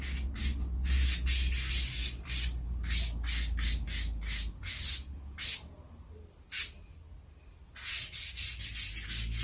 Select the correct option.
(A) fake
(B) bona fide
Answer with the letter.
B